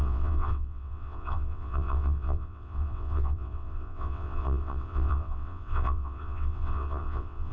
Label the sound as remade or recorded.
remade